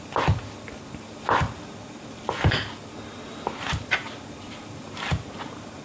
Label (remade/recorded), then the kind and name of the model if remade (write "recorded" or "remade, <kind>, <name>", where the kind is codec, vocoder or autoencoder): recorded